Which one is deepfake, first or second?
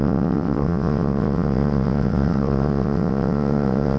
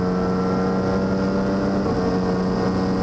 first